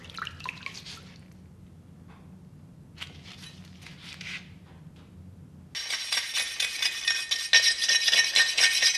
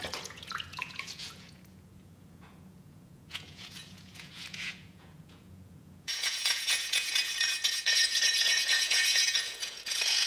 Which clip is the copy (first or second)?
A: second